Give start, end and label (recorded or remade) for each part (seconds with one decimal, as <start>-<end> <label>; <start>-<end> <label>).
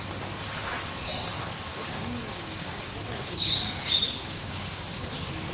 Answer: 0.0-1.7 recorded; 1.7-5.0 remade; 5.0-5.5 recorded